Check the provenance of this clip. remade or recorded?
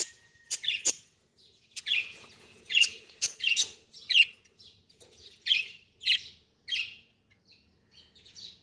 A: remade